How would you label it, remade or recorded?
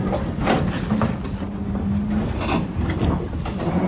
recorded